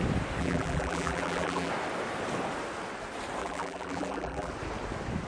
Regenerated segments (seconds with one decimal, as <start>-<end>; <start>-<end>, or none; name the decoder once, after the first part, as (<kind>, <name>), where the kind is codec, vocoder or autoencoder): 0.4-1.7 (vocoder, BigVGAN v2); 3.4-4.5